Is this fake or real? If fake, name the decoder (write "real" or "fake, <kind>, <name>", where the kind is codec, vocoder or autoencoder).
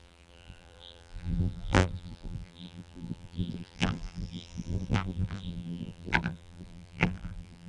fake, vocoder, BigVGAN v2